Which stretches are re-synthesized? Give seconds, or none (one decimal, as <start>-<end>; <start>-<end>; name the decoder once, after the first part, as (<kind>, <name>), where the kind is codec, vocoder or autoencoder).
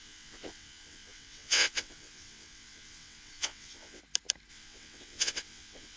0.0-4.0 (vocoder, WaveNeXt); 4.5-6.0